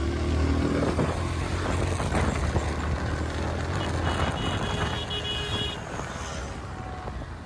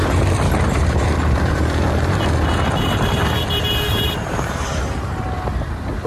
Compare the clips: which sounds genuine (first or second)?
first